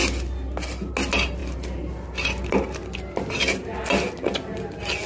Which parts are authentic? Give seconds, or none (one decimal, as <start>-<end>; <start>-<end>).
0.0-5.1